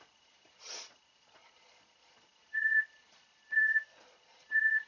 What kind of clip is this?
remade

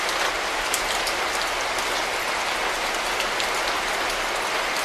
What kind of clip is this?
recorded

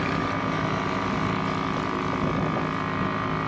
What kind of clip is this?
recorded